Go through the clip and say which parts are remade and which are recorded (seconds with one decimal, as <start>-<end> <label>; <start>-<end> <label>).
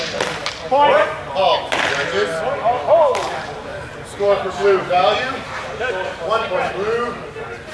0.0-3.7 recorded; 3.7-5.3 remade; 5.3-7.7 recorded